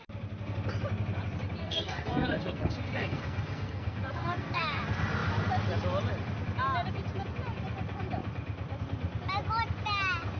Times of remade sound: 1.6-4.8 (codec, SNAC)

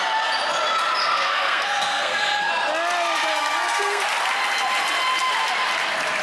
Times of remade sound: 1.0-2.5 (codec, SNAC); 3.3-4.0

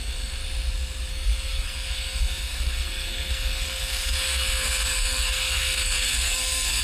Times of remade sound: 0.0-0.4 (codec, SNAC); 1.1-6.8

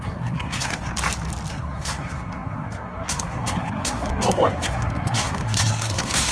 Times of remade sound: 0.0-0.9 (codec, SNAC); 1.5-6.3

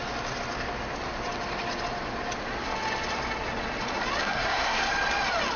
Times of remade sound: 4.2-4.8 (codec, SNAC)

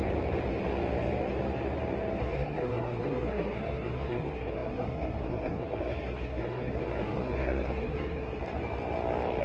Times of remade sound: 2.2-8.4 (codec, SNAC)